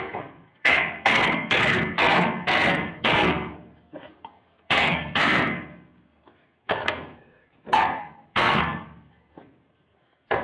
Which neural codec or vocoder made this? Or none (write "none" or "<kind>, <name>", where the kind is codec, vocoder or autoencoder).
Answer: codec, SNAC